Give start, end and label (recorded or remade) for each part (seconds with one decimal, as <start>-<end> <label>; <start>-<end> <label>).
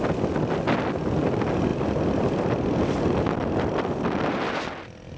0.0-5.2 recorded